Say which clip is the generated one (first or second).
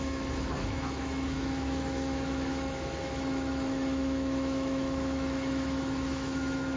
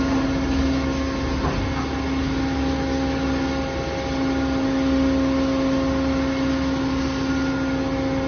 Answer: first